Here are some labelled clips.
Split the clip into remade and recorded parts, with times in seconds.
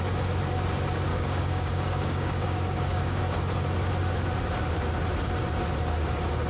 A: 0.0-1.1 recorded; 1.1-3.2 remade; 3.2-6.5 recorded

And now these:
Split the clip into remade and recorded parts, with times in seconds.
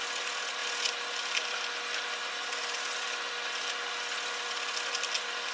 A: 0.0-5.5 recorded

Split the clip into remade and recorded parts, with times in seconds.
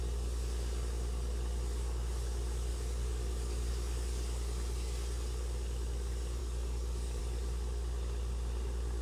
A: 0.0-2.7 recorded; 2.7-3.7 remade; 3.7-6.4 recorded; 6.4-7.2 remade; 7.2-9.0 recorded